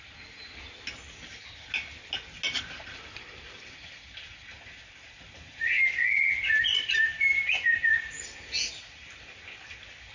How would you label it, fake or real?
real